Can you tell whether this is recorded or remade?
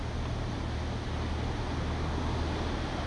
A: recorded